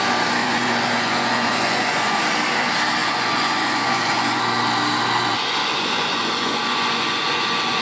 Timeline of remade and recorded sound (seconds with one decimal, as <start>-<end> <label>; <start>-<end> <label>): 0.0-0.4 recorded; 0.4-2.2 remade; 2.2-3.0 recorded; 3.0-4.4 remade; 4.4-5.3 recorded; 5.3-7.8 remade